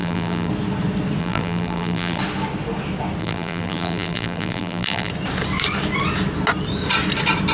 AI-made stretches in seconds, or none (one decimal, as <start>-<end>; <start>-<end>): 0.0-0.5; 1.2-2.2; 3.2-5.1

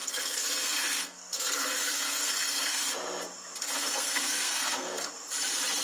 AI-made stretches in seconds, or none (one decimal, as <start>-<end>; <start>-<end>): 0.0-2.9; 3.6-5.1

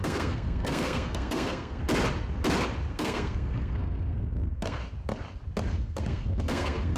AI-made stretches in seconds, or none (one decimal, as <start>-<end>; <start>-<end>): 0.0-1.8; 2.9-4.8; 5.7-7.0

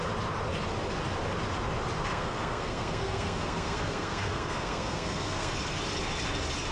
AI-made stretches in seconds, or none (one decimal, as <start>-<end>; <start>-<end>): 2.1-5.5

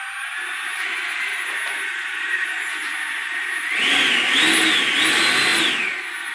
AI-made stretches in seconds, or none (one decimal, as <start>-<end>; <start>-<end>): none

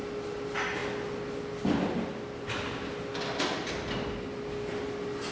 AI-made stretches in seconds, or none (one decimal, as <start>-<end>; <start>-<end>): none

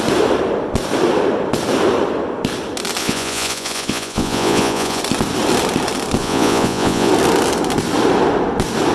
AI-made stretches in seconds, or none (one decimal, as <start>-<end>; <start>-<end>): 3.0-5.0; 6.2-7.1

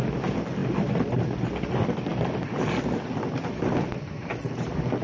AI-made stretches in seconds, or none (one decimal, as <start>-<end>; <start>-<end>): none